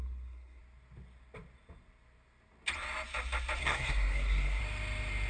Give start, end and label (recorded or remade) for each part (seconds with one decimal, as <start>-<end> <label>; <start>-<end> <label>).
0.0-0.6 remade; 0.6-3.6 recorded; 3.6-4.6 remade; 4.6-5.3 recorded